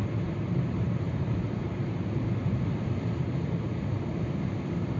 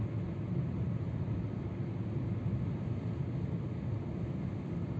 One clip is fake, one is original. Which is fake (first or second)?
first